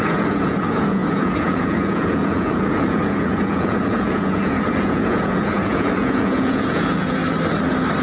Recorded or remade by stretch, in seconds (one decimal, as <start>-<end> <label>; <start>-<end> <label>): 0.0-7.2 remade; 7.2-8.0 recorded